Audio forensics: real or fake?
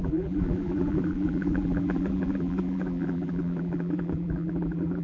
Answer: fake